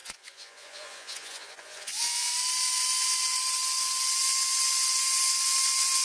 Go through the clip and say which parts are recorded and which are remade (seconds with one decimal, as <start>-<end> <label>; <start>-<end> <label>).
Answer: 0.0-2.3 remade; 2.3-6.0 recorded